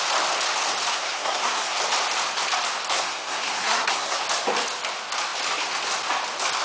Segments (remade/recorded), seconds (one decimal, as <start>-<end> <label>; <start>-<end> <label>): 0.0-0.9 recorded; 0.9-1.8 remade; 1.8-2.9 recorded; 2.9-4.2 remade; 4.2-6.6 recorded